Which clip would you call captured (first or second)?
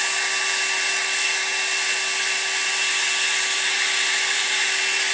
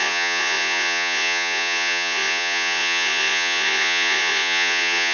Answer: first